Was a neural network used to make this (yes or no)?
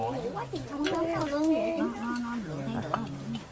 no